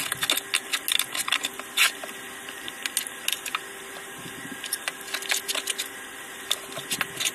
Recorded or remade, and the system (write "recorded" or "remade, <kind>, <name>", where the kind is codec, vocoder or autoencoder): recorded